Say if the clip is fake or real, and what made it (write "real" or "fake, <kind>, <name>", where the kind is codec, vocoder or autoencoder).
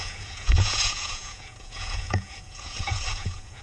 fake, vocoder, Vocos